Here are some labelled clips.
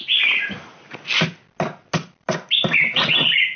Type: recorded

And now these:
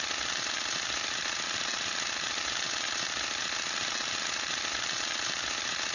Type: recorded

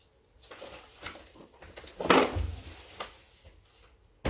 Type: recorded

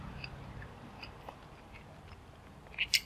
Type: recorded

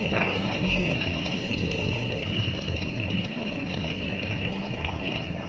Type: remade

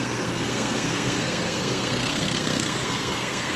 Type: remade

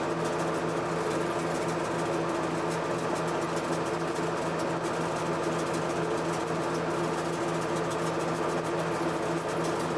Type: recorded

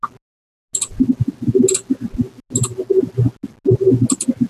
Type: recorded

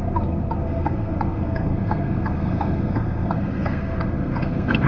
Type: remade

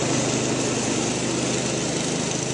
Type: recorded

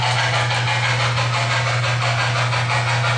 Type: recorded